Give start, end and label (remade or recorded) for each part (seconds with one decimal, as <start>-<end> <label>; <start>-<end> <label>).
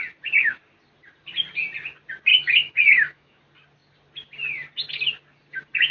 0.0-2.3 recorded; 2.3-3.4 remade; 3.4-5.9 recorded